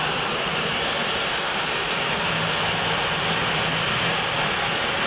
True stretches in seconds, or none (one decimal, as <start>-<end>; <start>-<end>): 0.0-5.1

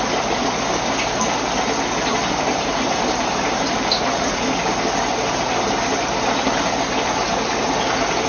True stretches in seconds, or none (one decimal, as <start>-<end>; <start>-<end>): 0.0-2.1; 4.3-8.3

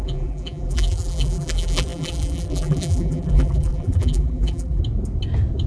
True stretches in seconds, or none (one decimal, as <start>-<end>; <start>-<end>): 4.8-5.7

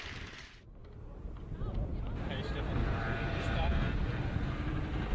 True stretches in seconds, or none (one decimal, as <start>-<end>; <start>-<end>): 0.0-0.8; 1.5-1.9; 4.3-5.1